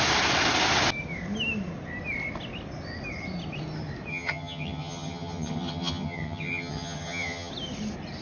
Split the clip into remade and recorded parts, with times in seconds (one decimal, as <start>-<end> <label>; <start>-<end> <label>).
0.0-4.1 recorded; 4.1-7.5 remade; 7.5-8.2 recorded